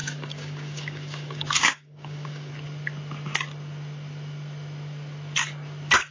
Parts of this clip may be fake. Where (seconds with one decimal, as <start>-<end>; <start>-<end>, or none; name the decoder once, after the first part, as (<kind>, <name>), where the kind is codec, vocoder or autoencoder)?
0.0-2.5 (codec, DAC)